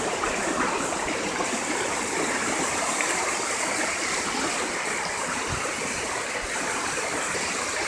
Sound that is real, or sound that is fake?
real